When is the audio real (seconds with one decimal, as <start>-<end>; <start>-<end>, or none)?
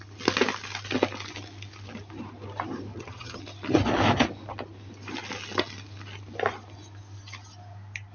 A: 0.0-2.9; 3.4-8.1